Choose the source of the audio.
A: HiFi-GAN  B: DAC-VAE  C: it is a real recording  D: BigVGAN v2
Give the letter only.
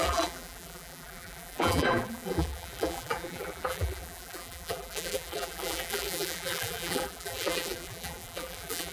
D